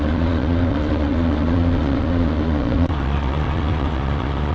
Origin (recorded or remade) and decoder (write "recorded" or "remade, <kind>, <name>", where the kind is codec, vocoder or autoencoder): remade, vocoder, Vocos